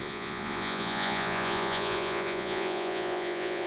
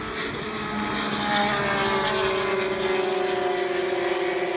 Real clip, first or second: second